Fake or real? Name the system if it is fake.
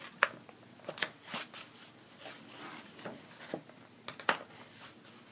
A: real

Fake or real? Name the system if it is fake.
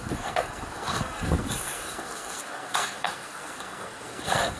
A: fake, codec, SNAC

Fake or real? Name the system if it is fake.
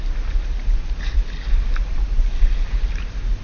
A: real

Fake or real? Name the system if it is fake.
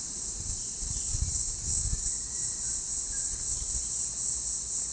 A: real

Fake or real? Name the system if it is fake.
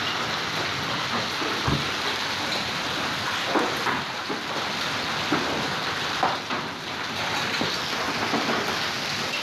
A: real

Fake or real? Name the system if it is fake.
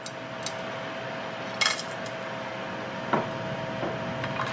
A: real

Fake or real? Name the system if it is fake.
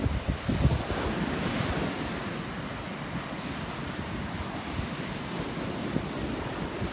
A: real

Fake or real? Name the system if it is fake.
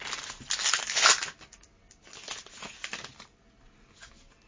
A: real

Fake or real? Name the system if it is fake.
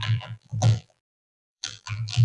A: fake, vocoder, BigVGAN v2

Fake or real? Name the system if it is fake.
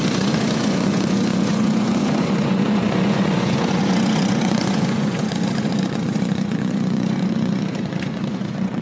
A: fake, vocoder, Vocos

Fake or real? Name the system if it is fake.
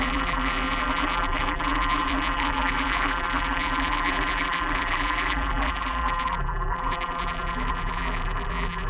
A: fake, vocoder, BigVGAN v2